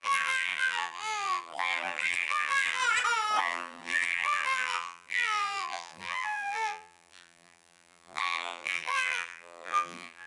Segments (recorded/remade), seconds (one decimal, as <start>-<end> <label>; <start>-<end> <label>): 0.0-2.8 remade; 2.8-3.4 recorded; 3.4-10.3 remade